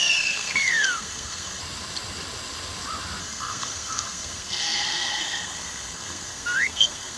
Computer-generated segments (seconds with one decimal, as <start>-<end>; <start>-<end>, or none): 0.0-1.6; 3.2-7.2